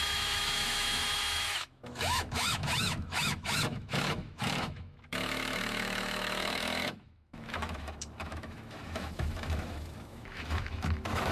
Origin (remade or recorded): remade